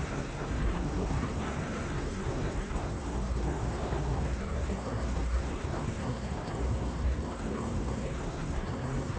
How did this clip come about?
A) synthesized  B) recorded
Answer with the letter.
A